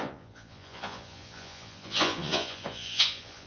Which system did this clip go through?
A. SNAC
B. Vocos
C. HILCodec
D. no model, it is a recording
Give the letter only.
B